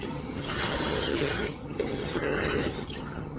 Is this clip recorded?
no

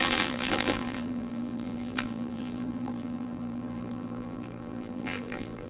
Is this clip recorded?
no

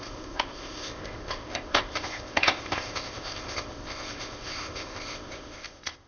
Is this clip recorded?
no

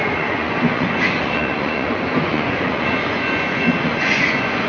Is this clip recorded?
no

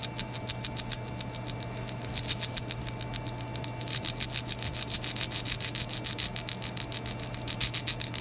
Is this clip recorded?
yes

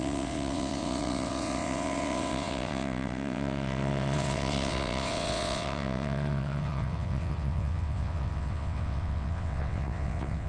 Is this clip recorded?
no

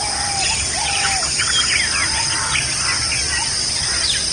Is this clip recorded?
yes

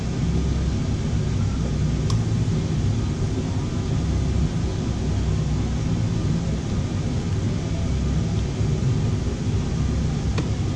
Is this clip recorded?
yes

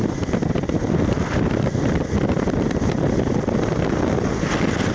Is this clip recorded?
no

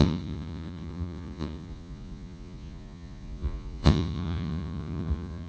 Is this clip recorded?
no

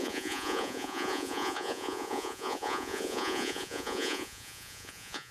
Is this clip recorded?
no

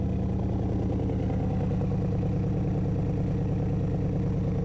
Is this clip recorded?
yes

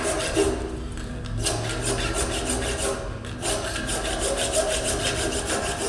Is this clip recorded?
yes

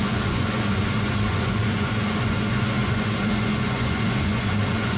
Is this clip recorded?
no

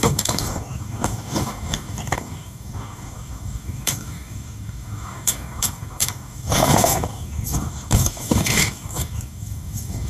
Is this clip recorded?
no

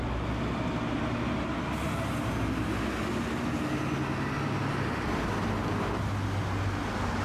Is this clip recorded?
yes